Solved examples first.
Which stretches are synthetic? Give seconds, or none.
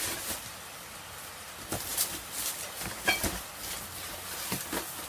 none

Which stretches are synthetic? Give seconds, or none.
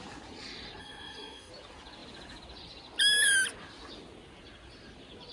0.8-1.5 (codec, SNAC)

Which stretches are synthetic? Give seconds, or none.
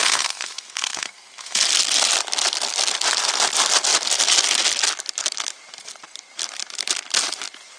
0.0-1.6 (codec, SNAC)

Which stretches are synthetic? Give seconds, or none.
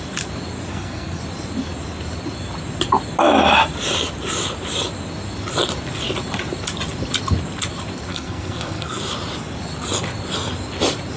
0.7-1.2 (codec, SNAC); 8.1-9.0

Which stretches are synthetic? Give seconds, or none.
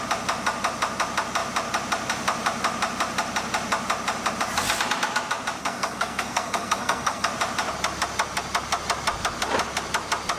5.6-7.3 (codec, SNAC)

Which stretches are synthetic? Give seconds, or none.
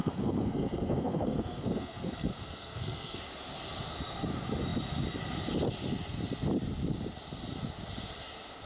0.0-3.2 (codec, SNAC)